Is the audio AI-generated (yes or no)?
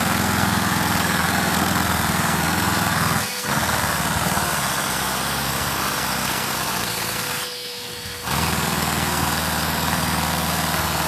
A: yes